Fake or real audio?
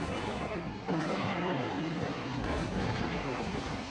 fake